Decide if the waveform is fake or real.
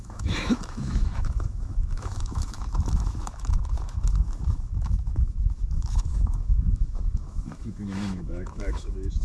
fake